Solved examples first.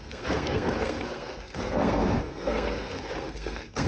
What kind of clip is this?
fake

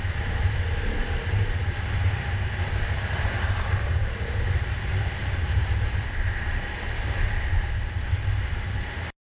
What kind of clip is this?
real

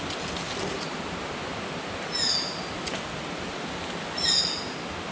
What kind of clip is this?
real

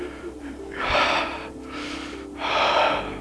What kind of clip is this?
real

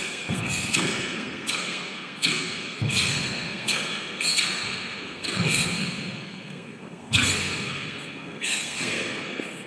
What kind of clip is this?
fake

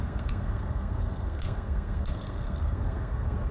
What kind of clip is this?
fake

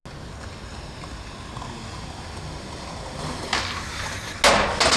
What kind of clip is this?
real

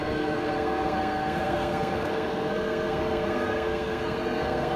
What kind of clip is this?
fake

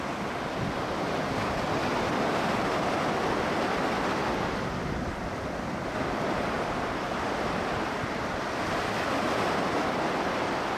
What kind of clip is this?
real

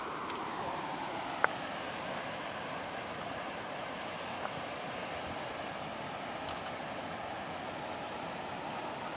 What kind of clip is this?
real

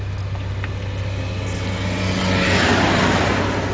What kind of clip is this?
real